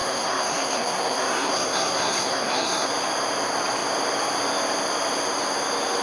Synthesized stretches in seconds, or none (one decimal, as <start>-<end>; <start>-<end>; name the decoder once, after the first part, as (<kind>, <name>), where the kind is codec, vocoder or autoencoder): 0.0-2.9 (codec, SNAC)